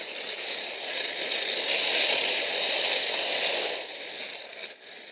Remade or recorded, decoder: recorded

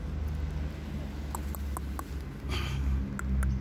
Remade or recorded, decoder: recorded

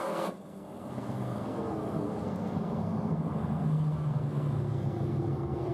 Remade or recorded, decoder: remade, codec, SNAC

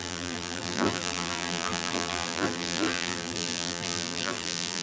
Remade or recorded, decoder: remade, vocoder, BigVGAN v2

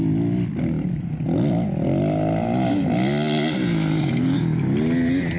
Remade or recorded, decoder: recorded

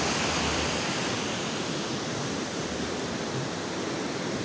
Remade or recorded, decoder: remade, vocoder, BigVGAN v2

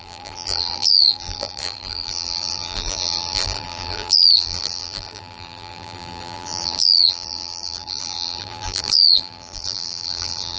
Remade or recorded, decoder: remade, vocoder, BigVGAN v2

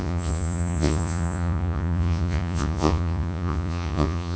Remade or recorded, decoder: remade, vocoder, Vocos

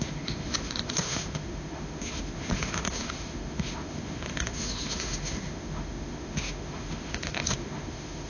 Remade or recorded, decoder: remade, autoencoder, DAC-VAE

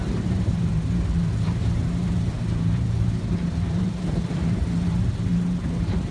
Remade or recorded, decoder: remade, vocoder, BigVGAN v2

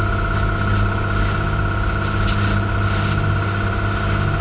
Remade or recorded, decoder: recorded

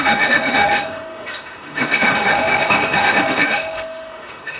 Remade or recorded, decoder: remade, autoencoder, DAC-VAE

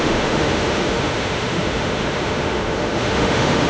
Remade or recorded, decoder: remade, autoencoder, DAC-VAE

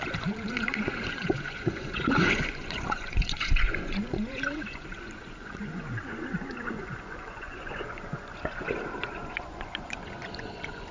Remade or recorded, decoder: remade, vocoder, Vocos